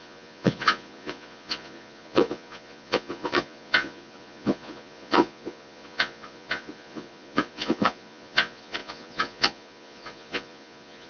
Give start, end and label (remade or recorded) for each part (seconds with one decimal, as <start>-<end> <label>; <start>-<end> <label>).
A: 0.0-11.1 remade